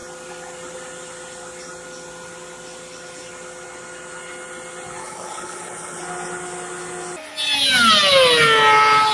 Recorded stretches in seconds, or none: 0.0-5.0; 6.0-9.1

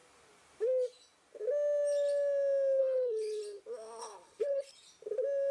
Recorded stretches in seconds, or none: 0.0-2.8; 3.4-4.0; 4.7-5.5

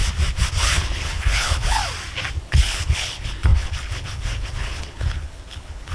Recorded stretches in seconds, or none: 0.0-0.5; 1.8-2.4